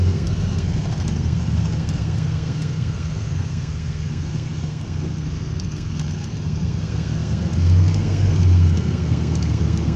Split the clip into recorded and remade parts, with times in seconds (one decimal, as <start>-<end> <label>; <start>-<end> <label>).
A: 0.0-10.0 remade